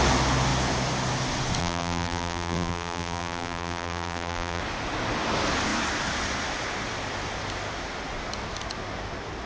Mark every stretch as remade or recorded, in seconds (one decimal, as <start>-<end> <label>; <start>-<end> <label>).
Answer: 0.0-1.6 recorded; 1.6-4.6 remade; 4.6-9.5 recorded